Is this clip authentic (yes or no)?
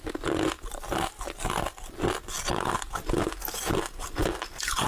yes